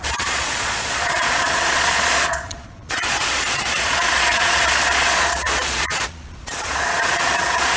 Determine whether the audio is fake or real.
fake